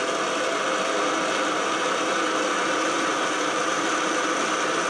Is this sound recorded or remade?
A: recorded